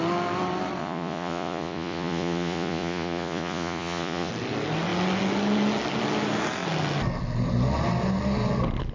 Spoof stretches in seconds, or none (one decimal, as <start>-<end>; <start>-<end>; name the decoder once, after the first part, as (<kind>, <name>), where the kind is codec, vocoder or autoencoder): 0.8-4.3 (vocoder, Vocos)